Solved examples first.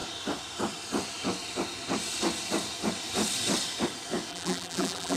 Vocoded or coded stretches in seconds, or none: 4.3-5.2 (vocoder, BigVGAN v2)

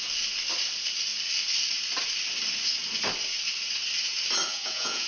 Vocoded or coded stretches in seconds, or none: 4.5-5.1 (vocoder, Vocos)

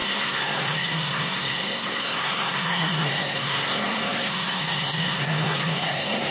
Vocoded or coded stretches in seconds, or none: 0.0-6.3 (codec, SNAC)

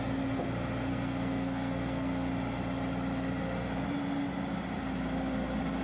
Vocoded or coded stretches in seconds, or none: 0.9-2.3 (codec, SNAC)

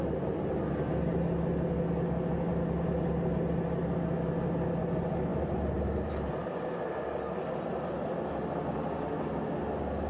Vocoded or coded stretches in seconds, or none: 5.3-6.3 (vocoder, BigVGAN v2)

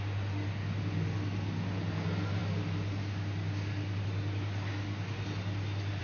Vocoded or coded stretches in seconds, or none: none

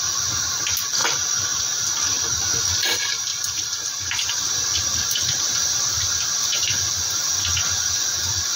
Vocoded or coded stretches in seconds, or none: 1.0-1.6 (vocoder, BigVGAN v2); 3.3-5.4